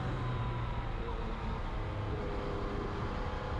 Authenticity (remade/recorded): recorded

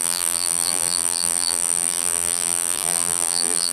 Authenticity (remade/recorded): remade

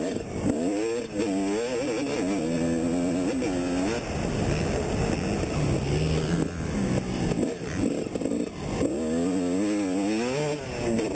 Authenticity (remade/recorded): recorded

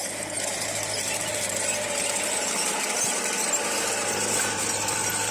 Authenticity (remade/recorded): recorded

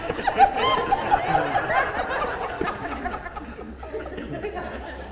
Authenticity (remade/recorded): recorded